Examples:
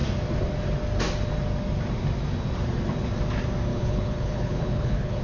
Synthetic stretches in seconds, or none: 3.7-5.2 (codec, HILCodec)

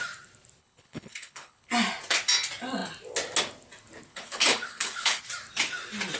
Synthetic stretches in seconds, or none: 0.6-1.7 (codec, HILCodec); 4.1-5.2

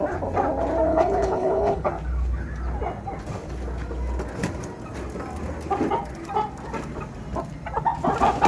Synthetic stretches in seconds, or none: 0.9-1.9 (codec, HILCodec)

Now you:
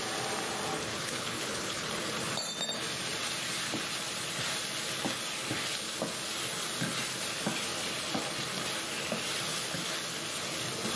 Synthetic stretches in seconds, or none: 0.9-1.9 (codec, HILCodec)

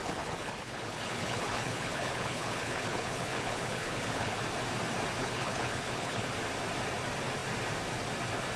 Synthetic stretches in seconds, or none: 0.0-4.4 (codec, HILCodec); 5.2-6.3